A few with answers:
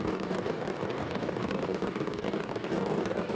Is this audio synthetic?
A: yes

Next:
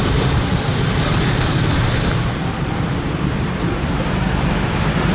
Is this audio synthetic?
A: yes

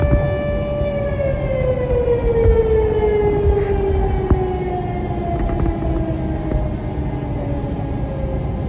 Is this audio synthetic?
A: no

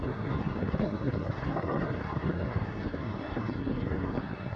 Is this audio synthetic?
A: yes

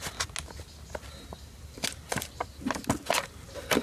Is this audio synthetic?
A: no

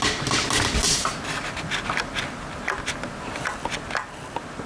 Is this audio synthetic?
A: no